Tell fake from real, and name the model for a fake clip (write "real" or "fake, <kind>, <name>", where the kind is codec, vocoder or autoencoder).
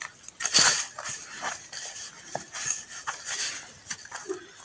real